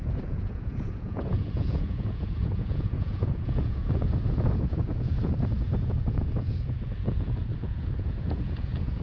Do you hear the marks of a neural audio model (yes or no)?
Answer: yes